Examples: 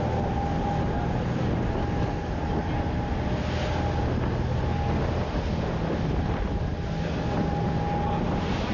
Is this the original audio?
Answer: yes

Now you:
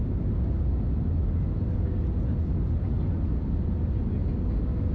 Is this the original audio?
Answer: yes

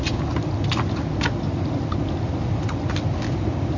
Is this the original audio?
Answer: yes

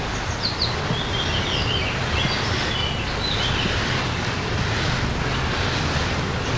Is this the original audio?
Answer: yes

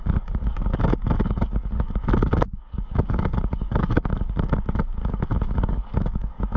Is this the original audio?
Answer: no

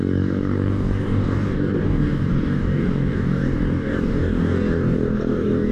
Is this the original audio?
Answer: no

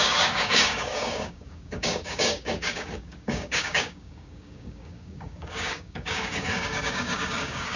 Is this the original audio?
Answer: no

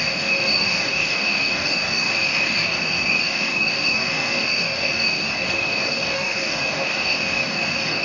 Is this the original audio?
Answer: no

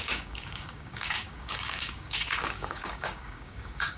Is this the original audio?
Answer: no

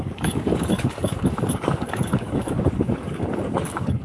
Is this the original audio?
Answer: no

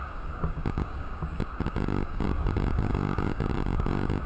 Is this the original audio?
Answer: no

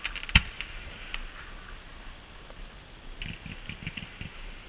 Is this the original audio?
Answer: yes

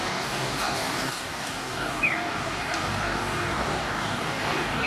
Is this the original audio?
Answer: no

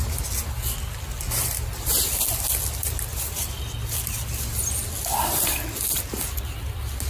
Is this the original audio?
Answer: yes